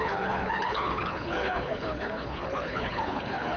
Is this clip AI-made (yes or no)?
yes